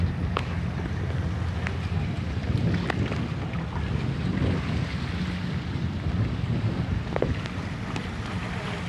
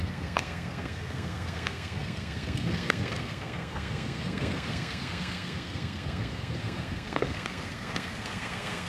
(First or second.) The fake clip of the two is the second